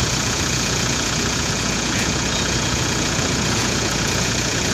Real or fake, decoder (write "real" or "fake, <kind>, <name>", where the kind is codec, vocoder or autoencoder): fake, vocoder, Vocos